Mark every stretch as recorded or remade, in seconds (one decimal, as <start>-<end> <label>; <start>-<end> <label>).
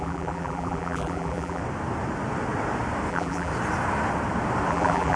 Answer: 0.0-1.6 remade; 1.6-3.1 recorded; 3.1-3.5 remade; 3.5-4.7 recorded; 4.7-5.2 remade